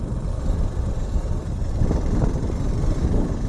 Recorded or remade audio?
recorded